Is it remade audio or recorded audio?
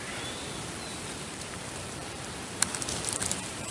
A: remade